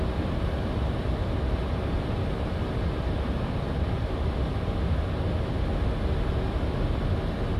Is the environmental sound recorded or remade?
recorded